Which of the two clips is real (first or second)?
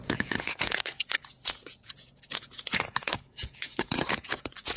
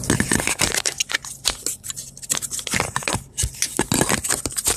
second